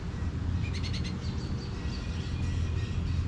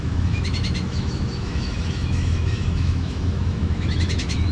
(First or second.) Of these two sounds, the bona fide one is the first